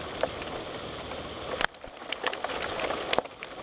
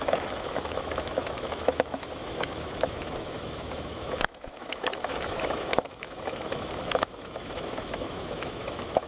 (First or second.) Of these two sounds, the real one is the first